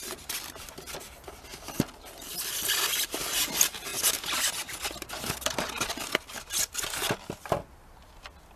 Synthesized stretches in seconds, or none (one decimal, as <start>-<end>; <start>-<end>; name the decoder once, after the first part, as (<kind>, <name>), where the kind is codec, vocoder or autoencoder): 1.5-2.6 (vocoder, BigVGAN v2); 3.9-6.7